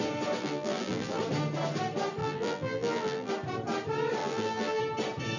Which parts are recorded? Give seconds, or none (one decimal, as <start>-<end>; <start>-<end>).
0.0-0.4; 1.2-2.2; 3.3-4.2; 4.8-5.4